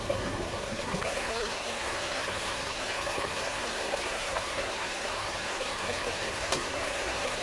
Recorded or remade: remade